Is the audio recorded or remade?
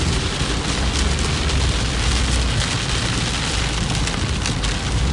recorded